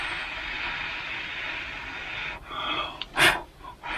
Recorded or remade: recorded